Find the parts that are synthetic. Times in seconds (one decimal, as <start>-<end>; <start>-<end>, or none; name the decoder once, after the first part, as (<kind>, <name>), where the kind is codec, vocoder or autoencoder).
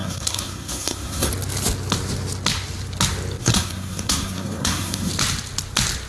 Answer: 0.0-1.3 (codec, SNAC); 3.4-5.1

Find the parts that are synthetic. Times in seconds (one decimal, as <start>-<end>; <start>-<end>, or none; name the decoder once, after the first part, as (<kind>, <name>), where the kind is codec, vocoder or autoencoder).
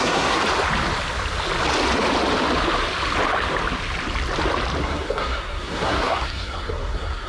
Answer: 0.0-0.4 (codec, SNAC); 4.8-7.3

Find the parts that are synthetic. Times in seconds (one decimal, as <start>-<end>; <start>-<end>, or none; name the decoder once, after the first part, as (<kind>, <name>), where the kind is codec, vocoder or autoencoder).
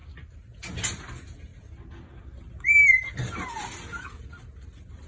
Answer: none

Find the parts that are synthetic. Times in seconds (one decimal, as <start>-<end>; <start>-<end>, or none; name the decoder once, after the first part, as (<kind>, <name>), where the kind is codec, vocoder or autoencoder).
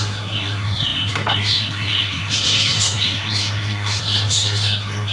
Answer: 0.0-5.1 (codec, SNAC)